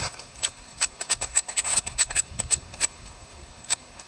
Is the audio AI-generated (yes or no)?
yes